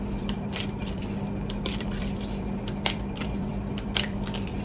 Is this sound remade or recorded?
remade